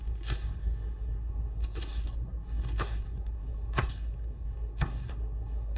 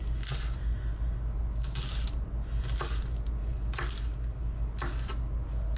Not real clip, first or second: first